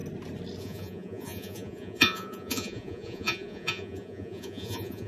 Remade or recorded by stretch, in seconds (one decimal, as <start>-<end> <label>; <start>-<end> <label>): 0.0-0.6 recorded; 0.6-5.1 remade